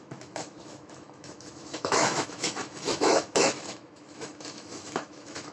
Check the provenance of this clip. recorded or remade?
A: remade